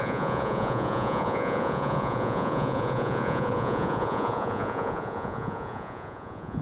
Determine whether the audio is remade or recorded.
remade